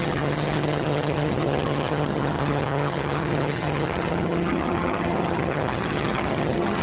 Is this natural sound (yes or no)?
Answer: no